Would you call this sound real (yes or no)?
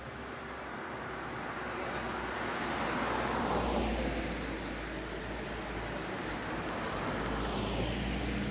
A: yes